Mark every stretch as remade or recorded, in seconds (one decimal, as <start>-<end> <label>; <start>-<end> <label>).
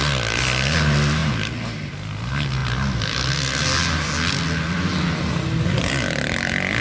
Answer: 0.0-6.8 recorded